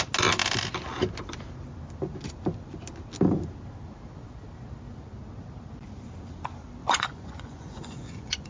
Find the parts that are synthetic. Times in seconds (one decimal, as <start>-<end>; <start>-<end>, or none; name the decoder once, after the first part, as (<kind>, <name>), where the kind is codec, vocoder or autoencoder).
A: 6.8-8.5 (vocoder, Vocos)